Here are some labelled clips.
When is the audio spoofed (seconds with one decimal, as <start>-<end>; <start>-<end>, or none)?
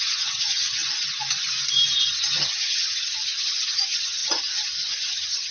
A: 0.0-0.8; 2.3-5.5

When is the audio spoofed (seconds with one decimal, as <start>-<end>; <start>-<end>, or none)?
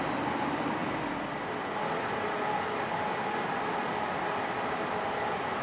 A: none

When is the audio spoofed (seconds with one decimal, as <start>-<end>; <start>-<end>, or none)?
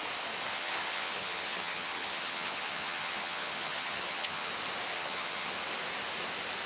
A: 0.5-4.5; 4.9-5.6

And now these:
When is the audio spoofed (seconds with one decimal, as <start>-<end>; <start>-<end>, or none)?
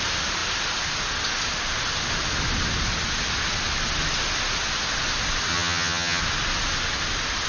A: 5.5-6.2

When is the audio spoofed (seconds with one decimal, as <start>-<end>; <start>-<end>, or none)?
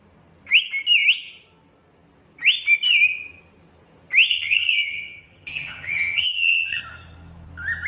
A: 4.3-6.8